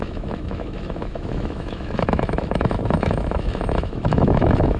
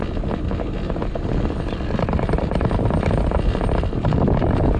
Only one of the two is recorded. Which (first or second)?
second